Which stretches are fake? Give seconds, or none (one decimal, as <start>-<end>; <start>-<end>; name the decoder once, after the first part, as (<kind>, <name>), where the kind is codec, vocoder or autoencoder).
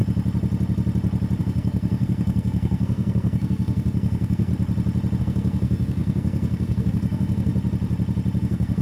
1.4-4.5 (codec, SNAC); 5.2-7.5; 8.4-8.8